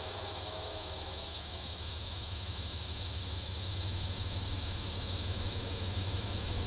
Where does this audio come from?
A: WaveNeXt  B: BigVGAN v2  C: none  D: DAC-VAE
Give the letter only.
D